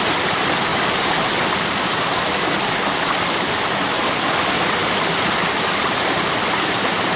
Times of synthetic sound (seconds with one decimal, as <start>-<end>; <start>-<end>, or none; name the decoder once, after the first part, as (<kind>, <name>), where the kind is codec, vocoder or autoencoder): 4.8-7.2 (vocoder, BigVGAN v2)